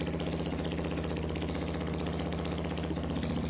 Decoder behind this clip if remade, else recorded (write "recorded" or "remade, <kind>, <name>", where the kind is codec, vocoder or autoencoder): recorded